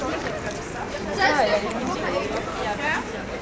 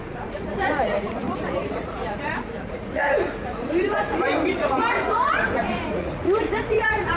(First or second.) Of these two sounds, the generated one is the second